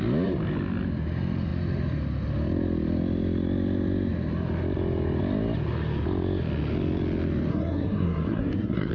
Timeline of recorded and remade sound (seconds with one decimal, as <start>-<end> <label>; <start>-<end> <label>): 0.0-7.5 recorded; 7.5-8.9 remade